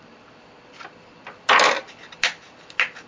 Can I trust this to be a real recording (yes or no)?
yes